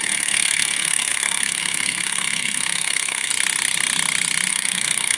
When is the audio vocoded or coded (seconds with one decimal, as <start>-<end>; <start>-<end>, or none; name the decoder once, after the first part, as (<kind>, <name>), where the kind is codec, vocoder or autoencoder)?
0.0-3.3 (codec, SNAC); 4.5-5.2